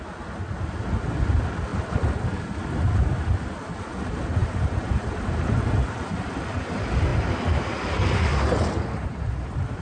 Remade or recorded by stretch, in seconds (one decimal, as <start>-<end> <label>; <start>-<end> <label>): 0.0-4.4 recorded; 4.4-5.5 remade; 5.5-9.8 recorded